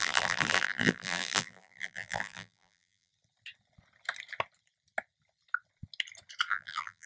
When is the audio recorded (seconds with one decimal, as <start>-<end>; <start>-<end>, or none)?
3.1-6.5